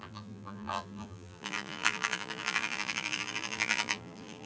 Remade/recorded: remade